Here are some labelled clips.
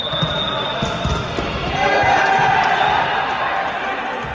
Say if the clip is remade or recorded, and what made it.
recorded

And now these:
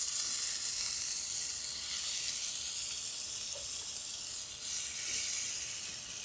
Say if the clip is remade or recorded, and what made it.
recorded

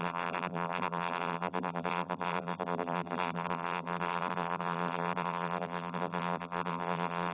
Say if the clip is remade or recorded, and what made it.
remade, vocoder, BigVGAN v2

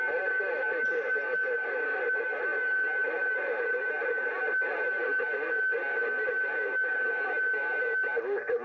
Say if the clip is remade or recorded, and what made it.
recorded